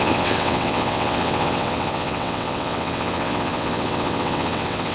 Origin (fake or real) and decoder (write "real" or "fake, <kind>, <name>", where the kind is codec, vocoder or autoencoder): fake, vocoder, WaveNeXt